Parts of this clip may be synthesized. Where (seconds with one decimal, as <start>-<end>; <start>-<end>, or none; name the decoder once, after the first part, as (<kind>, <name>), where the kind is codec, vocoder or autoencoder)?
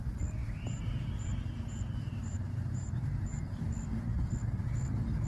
0.4-3.6 (vocoder, BigVGAN v2)